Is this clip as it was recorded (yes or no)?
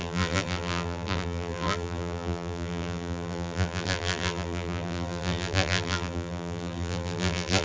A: no